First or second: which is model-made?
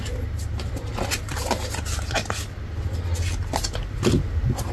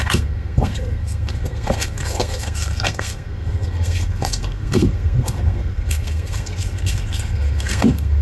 second